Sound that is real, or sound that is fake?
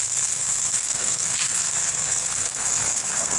fake